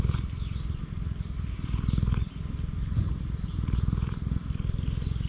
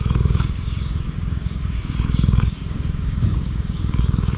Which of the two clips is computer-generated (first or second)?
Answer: second